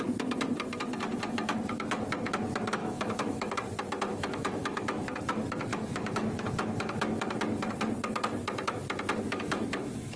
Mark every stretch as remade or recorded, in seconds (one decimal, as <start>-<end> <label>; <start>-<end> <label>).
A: 0.0-2.8 recorded; 2.8-3.5 remade; 3.5-4.1 recorded; 4.1-5.0 remade; 5.0-5.7 recorded; 5.7-7.6 remade; 7.6-9.3 recorded; 9.3-10.2 remade